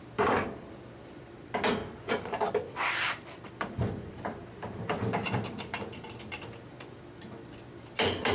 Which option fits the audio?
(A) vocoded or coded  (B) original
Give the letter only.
A